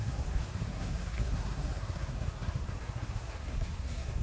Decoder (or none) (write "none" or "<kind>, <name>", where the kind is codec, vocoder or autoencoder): codec, SNAC